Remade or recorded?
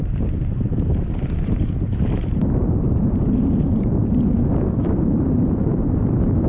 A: remade